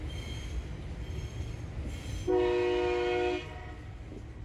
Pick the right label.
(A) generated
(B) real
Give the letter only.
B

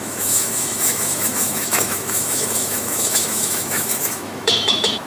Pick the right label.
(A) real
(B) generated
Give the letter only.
B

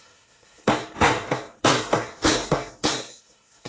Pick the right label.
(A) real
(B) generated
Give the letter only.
B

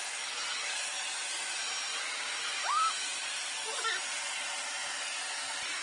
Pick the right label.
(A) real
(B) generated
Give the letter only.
A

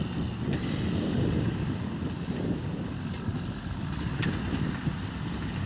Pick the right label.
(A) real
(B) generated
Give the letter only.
A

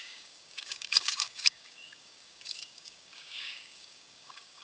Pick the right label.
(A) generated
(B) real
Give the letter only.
A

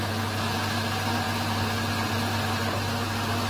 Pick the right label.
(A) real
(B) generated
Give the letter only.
A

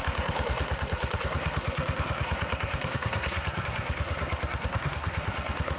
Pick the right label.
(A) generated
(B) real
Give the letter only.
A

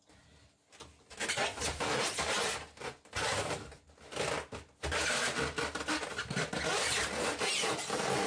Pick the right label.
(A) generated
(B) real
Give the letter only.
B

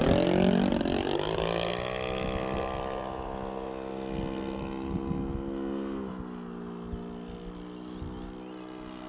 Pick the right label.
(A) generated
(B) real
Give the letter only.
B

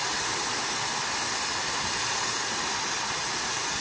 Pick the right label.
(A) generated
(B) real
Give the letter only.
B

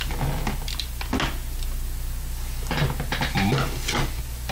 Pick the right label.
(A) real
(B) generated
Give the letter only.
A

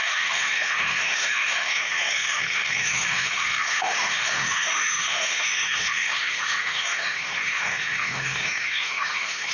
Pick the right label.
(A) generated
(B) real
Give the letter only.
A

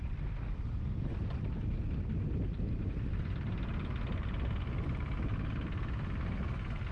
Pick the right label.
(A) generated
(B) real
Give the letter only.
B